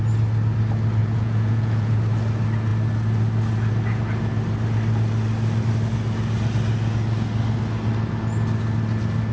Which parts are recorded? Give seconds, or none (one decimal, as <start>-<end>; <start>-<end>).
0.0-1.0; 2.0-9.3